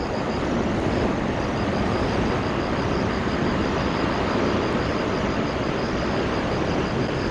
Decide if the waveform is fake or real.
real